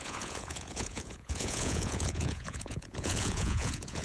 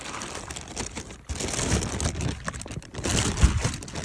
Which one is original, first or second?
second